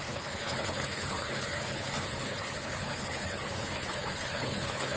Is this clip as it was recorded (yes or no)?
no